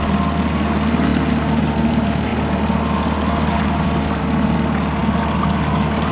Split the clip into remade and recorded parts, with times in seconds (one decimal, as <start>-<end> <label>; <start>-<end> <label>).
0.0-6.1 recorded